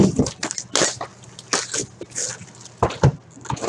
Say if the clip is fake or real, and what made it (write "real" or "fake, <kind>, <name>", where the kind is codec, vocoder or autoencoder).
real